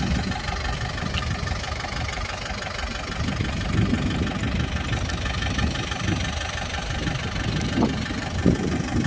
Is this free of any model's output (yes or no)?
yes